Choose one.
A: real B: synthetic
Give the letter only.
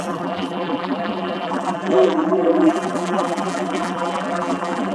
B